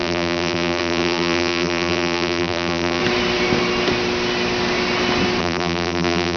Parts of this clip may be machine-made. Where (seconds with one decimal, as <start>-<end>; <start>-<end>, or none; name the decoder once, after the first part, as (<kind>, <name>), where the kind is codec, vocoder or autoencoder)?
0.0-3.0 (vocoder, BigVGAN v2); 5.4-6.4